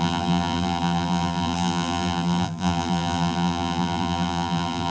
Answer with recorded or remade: remade